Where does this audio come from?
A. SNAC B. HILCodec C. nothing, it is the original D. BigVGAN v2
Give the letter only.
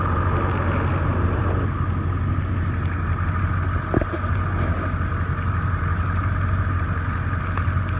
C